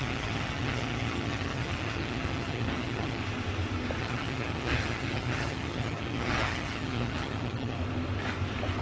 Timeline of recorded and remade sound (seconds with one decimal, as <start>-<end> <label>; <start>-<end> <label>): 0.0-3.2 remade; 3.2-4.0 recorded; 4.0-7.8 remade; 7.8-8.8 recorded